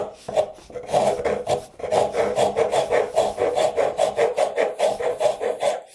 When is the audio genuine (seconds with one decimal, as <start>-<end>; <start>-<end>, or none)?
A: 0.0-5.9